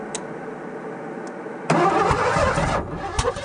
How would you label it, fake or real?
real